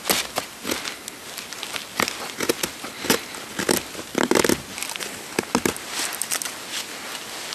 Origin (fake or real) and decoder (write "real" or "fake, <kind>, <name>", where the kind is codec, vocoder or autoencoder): real